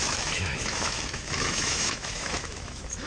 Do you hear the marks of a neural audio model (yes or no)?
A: yes